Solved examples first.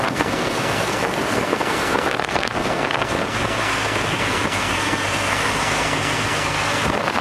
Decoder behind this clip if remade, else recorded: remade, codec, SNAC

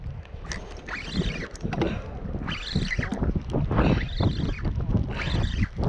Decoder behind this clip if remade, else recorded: recorded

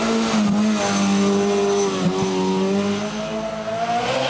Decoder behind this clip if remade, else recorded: recorded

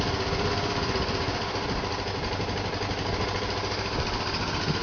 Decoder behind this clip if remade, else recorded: recorded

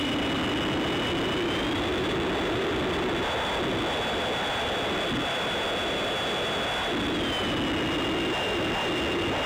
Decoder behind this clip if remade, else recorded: recorded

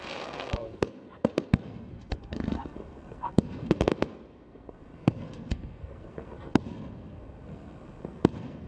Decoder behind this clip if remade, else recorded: remade, codec, SNAC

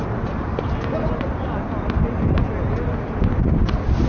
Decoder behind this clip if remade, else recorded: recorded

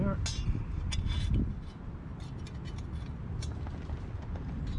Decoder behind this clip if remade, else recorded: recorded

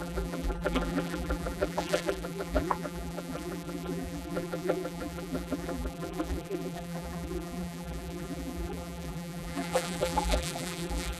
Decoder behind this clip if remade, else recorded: remade, vocoder, BigVGAN v2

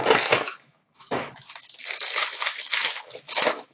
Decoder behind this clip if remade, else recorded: remade, autoencoder, DAC-VAE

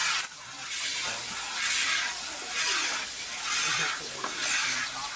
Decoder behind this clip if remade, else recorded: recorded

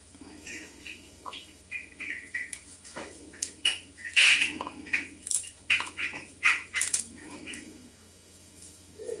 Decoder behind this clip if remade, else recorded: remade, autoencoder, DAC-VAE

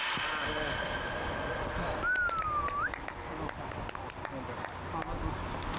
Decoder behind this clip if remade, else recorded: recorded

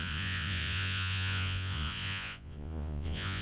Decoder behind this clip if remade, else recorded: remade, vocoder, Vocos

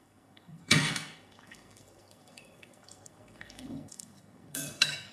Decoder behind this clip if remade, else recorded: remade, codec, SNAC